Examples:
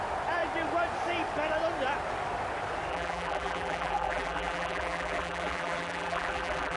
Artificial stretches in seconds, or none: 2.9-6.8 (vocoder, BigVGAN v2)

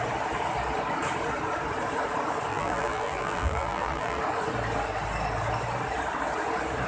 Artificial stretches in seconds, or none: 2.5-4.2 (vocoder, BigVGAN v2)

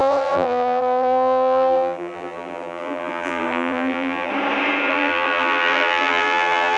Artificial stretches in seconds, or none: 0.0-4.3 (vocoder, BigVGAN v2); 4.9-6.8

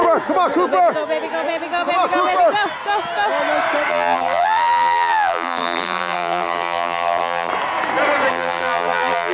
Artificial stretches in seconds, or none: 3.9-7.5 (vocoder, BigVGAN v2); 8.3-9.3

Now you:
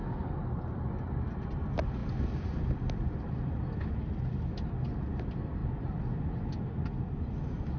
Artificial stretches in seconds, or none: none

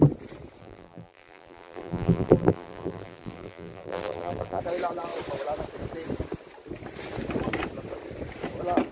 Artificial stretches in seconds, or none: 0.6-4.6 (vocoder, BigVGAN v2)

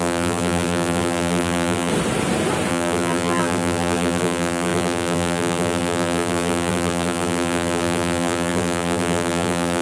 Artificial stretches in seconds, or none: 0.0-1.9 (vocoder, BigVGAN v2); 2.7-9.8

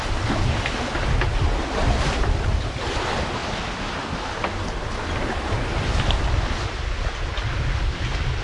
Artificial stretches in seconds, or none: 1.3-3.0 (vocoder, BigVGAN v2); 5.7-6.6